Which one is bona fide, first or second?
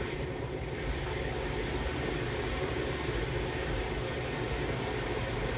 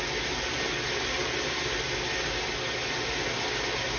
second